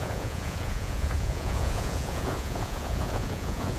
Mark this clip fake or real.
fake